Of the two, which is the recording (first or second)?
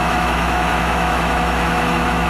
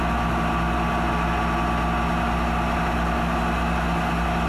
second